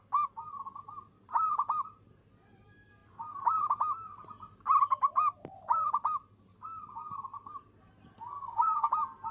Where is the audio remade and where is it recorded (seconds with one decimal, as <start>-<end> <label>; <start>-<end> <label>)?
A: 0.0-8.3 recorded; 8.3-8.9 remade; 8.9-9.3 recorded